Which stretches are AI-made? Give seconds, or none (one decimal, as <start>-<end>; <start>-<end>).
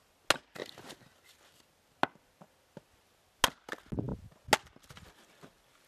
none